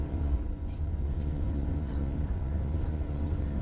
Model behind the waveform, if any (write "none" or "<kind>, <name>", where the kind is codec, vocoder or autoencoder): vocoder, Vocos